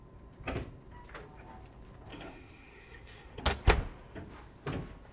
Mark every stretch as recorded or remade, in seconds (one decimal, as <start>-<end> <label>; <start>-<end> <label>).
0.0-2.1 recorded; 2.1-3.4 remade; 3.4-5.1 recorded